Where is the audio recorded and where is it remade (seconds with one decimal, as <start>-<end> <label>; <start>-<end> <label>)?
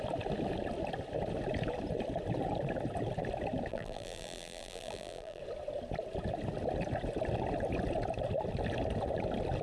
0.0-3.7 recorded; 3.7-5.4 remade; 5.4-9.6 recorded